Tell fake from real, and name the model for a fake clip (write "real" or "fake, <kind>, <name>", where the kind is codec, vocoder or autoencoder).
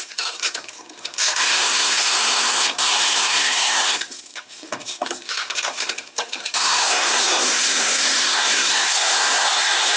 fake, codec, SNAC